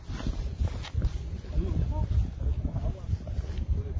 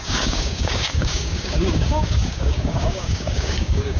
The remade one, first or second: second